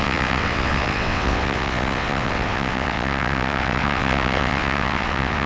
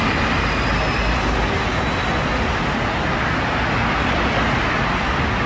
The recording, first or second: second